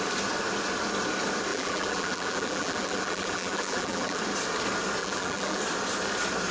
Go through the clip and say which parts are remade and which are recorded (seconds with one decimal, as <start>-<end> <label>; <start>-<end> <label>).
0.0-1.5 recorded; 1.5-4.2 remade; 4.2-5.0 recorded; 5.0-5.6 remade; 5.6-6.5 recorded